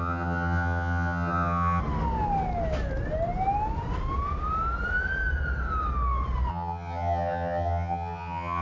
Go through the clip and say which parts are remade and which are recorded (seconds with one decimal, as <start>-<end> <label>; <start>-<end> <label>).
0.0-1.8 remade; 1.8-6.5 recorded; 6.5-8.6 remade